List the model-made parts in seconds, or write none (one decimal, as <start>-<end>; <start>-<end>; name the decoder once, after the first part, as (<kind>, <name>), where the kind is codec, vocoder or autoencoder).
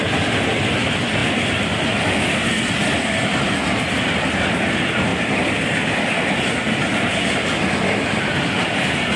none